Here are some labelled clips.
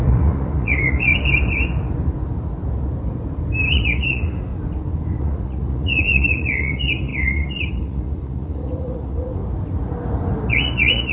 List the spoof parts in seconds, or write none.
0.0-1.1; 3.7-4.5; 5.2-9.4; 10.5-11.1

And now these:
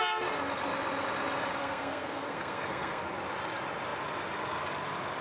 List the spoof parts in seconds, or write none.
1.6-3.0

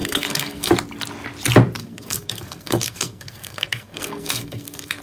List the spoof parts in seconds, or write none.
0.0-0.7; 1.8-5.0

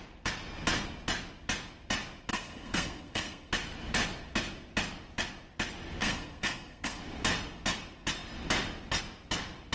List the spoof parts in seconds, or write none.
2.3-3.5; 6.0-7.0

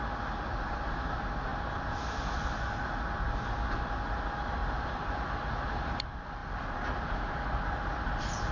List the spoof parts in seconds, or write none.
none

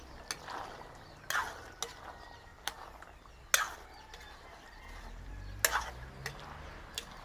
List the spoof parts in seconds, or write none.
none